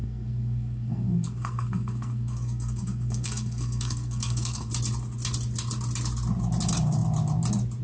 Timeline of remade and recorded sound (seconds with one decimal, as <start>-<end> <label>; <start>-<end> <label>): 0.0-4.7 remade; 4.7-7.8 recorded